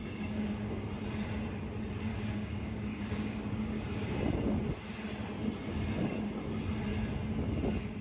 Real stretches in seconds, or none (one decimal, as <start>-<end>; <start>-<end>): 0.8-2.1; 4.2-8.0